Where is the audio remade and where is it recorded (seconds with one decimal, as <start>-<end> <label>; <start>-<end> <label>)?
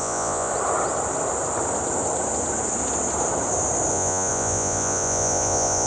0.0-0.5 remade; 0.5-3.9 recorded; 3.9-5.9 remade